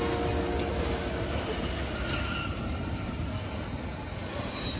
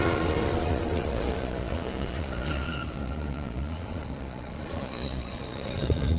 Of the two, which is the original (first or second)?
first